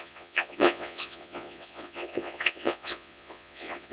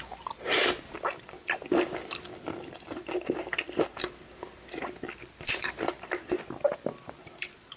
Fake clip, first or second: first